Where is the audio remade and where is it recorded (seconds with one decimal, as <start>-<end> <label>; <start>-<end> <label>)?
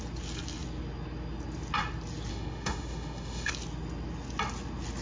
0.0-2.3 recorded; 2.3-3.5 remade; 3.5-5.0 recorded